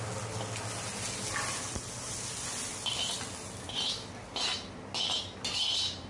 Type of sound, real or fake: real